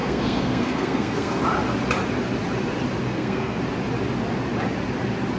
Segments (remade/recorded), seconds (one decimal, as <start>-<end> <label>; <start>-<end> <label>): 0.0-1.4 remade; 1.4-3.0 recorded; 3.0-3.6 remade; 3.6-5.4 recorded